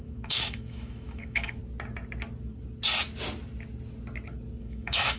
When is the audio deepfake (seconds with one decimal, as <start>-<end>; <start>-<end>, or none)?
0.0-1.6; 4.6-5.2